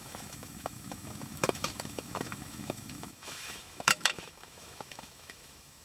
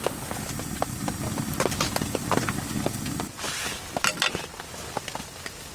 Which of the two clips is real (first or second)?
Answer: second